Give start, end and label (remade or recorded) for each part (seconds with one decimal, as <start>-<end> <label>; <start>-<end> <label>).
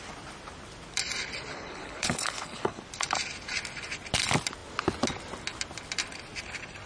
0.0-1.5 recorded; 1.5-2.8 remade; 2.8-6.9 recorded